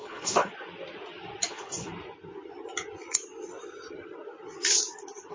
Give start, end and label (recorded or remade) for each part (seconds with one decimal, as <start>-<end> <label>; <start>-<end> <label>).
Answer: 0.0-0.5 remade; 0.5-1.5 recorded; 1.5-1.9 remade; 1.9-5.3 recorded